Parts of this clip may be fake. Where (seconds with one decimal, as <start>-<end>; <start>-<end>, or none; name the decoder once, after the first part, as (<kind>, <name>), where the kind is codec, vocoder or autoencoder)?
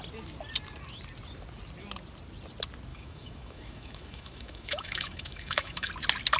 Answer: 2.9-5.9 (autoencoder, DAC-VAE)